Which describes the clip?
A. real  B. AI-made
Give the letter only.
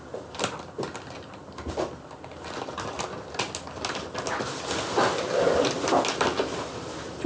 A